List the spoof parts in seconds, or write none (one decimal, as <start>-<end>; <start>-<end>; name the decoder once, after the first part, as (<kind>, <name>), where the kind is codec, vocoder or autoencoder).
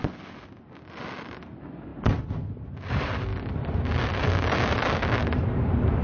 none